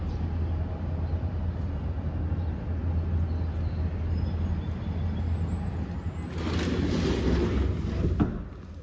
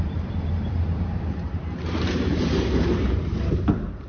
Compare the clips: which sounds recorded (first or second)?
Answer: first